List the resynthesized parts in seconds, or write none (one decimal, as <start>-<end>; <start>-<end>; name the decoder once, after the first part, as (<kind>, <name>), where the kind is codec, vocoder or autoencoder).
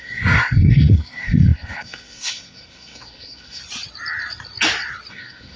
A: 0.0-3.6 (codec, SNAC); 5.1-5.6